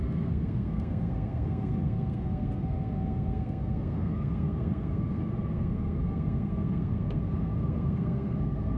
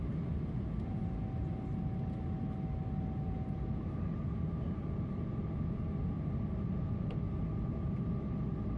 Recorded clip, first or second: second